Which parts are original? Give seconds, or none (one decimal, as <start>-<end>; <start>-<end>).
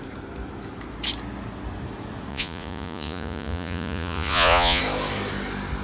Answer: 0.0-2.3; 4.8-5.8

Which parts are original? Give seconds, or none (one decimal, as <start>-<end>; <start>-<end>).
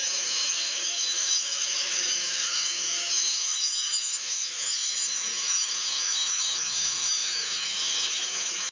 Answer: none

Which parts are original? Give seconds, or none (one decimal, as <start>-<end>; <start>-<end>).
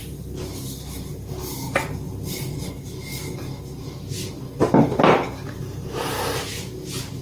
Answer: 0.0-7.2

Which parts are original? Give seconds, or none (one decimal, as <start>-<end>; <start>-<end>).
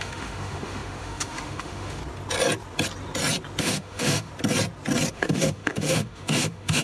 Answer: 2.0-3.6; 4.3-5.1